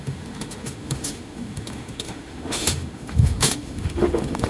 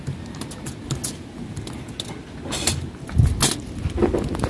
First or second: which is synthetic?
first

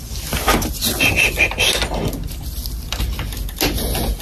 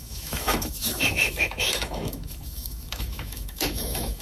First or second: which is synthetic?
second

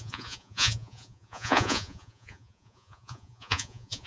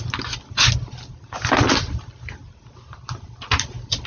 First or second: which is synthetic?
first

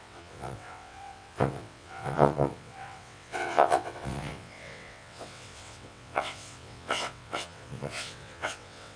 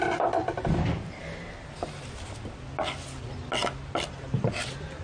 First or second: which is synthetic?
first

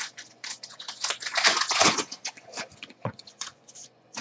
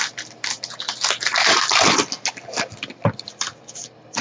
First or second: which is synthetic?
first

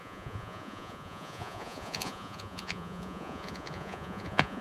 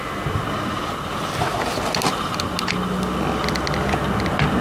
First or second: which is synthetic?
first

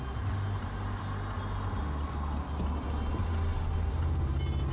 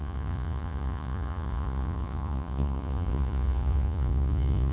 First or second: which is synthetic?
second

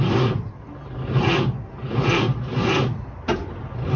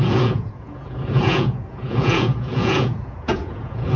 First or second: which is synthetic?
second